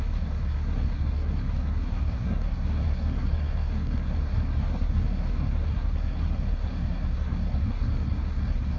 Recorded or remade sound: remade